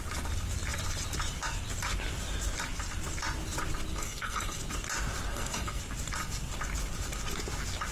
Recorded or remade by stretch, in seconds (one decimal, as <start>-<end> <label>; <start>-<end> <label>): 0.0-4.0 recorded; 4.0-4.6 remade; 4.6-5.3 recorded; 5.3-5.8 remade; 5.8-7.9 recorded